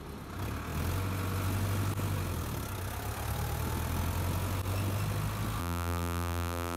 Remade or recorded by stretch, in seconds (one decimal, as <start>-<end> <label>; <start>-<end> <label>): 0.0-5.6 recorded; 5.6-6.8 remade